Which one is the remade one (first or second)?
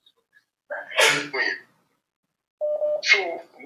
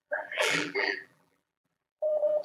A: second